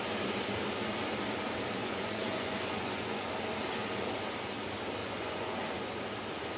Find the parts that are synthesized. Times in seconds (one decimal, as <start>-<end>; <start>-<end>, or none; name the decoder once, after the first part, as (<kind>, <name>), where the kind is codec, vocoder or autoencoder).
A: 1.8-3.3 (vocoder, Vocos); 5.0-5.8